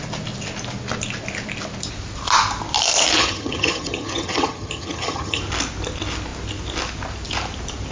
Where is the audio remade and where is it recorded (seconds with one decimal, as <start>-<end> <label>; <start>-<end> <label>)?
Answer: 0.0-3.2 recorded; 3.2-5.4 remade; 5.4-7.9 recorded